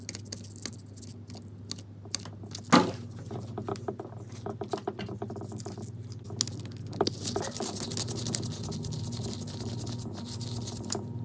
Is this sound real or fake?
real